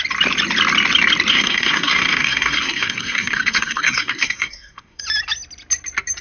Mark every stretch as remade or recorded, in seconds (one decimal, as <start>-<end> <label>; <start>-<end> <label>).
0.0-1.3 recorded; 1.3-5.0 remade; 5.0-6.2 recorded